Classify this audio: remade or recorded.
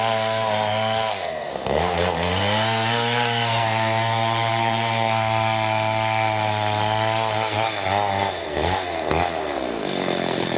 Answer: remade